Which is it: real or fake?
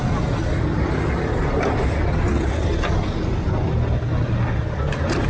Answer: real